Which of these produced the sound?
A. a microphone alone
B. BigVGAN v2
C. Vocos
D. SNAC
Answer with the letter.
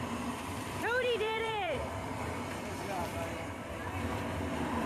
B